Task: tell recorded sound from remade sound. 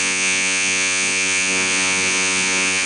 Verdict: remade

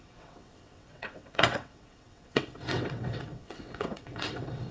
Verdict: remade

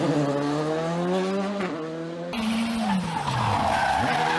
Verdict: recorded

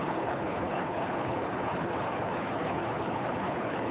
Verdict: remade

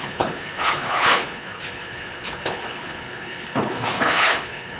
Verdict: remade